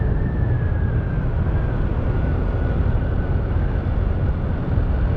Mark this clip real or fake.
real